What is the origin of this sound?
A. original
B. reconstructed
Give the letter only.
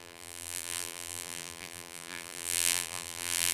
B